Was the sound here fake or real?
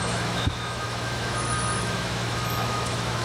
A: fake